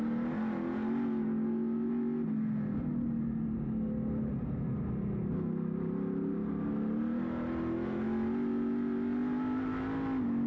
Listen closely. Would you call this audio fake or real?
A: real